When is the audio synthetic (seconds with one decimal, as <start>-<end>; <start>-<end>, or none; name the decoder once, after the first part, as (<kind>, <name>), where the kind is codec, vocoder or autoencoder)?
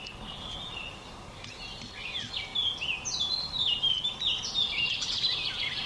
none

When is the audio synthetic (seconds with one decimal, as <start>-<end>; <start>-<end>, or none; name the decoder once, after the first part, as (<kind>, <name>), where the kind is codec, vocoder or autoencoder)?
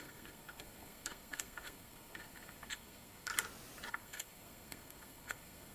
0.0-3.3 (codec, SNAC); 3.9-5.7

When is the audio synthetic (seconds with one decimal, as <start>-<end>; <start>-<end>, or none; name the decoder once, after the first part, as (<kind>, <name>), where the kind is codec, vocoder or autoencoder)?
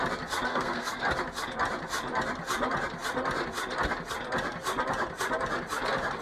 0.5-1.0 (codec, SNAC)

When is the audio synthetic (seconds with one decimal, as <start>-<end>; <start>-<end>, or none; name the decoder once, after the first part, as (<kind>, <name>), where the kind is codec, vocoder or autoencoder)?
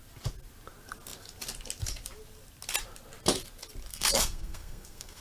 3.9-5.2 (codec, SNAC)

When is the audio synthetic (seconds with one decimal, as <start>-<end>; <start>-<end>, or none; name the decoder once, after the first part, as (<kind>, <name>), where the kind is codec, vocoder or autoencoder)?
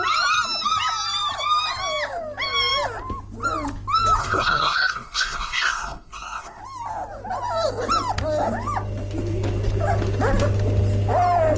4.2-6.6 (codec, SNAC)